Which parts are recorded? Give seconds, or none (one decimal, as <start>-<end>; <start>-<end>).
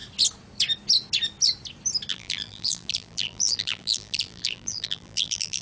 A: 0.0-2.1